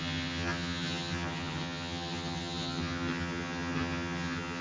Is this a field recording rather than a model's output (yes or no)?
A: no